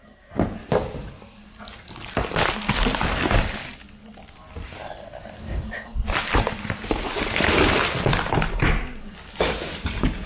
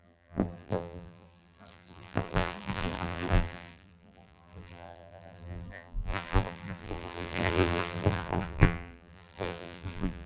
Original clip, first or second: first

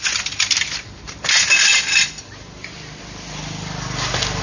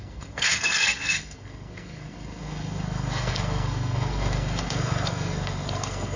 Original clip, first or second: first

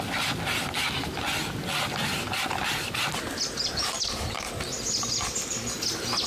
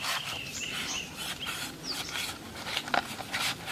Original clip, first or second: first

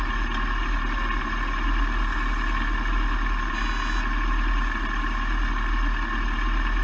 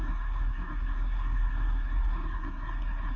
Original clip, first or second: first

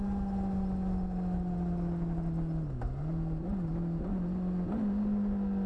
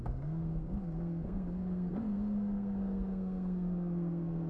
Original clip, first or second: first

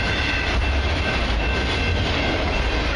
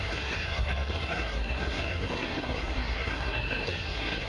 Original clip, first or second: first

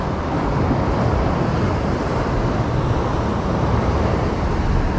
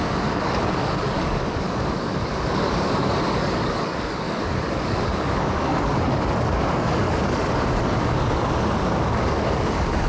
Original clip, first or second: first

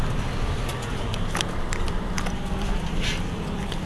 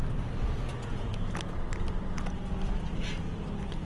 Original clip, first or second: second